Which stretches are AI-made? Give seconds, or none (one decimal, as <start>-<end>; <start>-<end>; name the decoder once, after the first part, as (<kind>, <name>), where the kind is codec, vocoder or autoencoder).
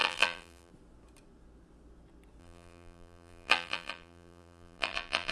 0.0-0.7 (vocoder, BigVGAN v2); 2.4-5.3